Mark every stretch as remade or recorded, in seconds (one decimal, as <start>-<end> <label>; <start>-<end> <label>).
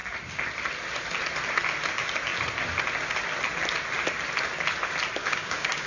0.0-5.2 recorded; 5.2-5.9 remade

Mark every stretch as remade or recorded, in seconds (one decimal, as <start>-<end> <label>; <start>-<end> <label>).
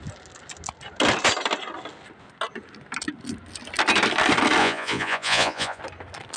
0.0-4.6 recorded; 4.6-5.8 remade; 5.8-6.4 recorded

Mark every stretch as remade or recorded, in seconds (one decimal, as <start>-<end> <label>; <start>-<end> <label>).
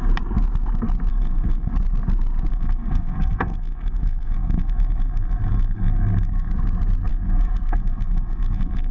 0.0-1.1 recorded; 1.1-1.7 remade; 1.7-2.5 recorded; 2.5-6.5 remade; 6.5-7.1 recorded; 7.1-8.9 remade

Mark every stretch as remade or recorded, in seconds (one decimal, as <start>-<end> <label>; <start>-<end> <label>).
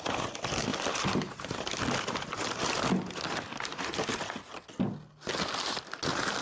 0.0-6.4 recorded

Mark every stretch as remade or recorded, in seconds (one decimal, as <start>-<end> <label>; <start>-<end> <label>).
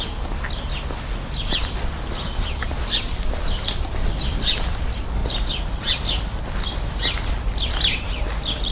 0.0-8.7 recorded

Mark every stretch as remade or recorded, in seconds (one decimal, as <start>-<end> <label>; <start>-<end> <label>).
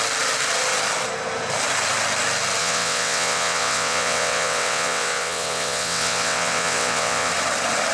0.0-2.6 recorded; 2.6-7.3 remade; 7.3-7.9 recorded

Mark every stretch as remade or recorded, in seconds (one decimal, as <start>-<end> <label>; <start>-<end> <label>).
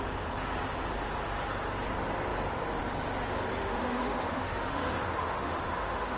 0.0-3.6 recorded; 3.6-6.2 remade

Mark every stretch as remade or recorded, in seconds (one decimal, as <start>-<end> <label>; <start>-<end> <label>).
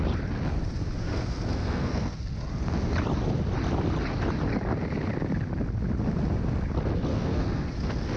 0.0-1.0 recorded; 1.0-2.2 remade; 2.2-7.1 recorded; 7.1-7.7 remade; 7.7-8.2 recorded